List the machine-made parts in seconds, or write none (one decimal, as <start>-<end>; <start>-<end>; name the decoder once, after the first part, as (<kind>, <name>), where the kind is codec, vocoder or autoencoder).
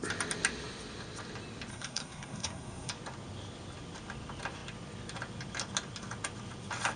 1.7-2.9 (codec, SNAC)